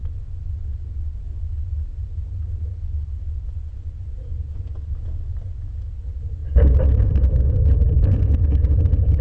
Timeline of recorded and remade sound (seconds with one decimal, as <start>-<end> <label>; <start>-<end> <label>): 0.0-9.2 recorded